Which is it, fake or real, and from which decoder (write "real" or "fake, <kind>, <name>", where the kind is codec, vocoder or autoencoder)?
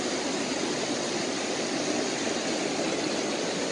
real